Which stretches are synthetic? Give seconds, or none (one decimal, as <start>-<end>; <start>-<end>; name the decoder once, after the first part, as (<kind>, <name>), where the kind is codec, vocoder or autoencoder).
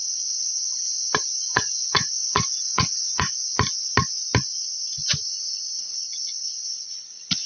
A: 1.3-3.4 (vocoder, Vocos)